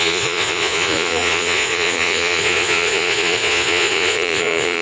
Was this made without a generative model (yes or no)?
no